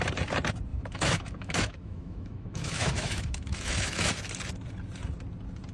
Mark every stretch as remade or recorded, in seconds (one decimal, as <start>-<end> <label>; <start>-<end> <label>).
0.0-0.7 recorded; 0.7-4.1 remade; 4.1-5.7 recorded